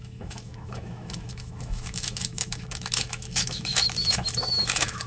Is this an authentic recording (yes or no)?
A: no